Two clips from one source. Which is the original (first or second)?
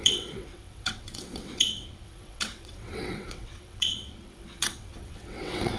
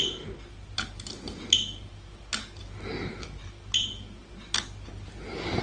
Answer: second